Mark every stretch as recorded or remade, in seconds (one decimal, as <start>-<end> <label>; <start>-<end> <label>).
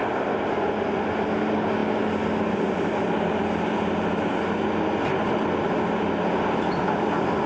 0.0-7.5 recorded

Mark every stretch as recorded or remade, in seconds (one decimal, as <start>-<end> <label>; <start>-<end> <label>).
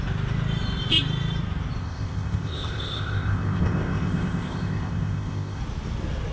0.0-1.8 recorded; 1.8-5.6 remade; 5.6-6.3 recorded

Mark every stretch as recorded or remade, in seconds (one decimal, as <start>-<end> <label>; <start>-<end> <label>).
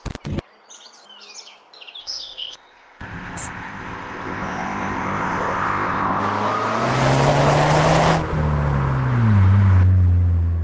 0.0-2.0 recorded; 2.0-6.2 remade; 6.2-10.6 recorded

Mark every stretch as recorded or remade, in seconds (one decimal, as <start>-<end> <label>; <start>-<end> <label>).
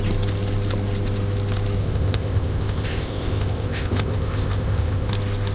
0.0-1.8 recorded; 1.8-5.1 remade; 5.1-5.5 recorded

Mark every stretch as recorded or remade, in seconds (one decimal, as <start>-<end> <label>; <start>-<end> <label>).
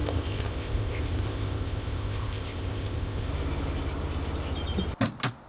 0.0-3.3 remade; 3.3-5.5 recorded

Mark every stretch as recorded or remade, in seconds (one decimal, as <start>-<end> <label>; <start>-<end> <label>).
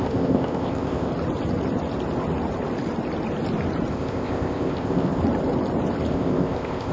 0.0-1.1 remade; 1.1-3.9 recorded; 3.9-5.2 remade; 5.2-6.1 recorded; 6.1-6.9 remade